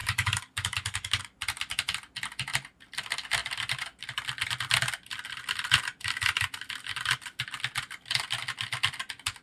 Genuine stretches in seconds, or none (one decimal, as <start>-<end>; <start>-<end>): 1.2-9.4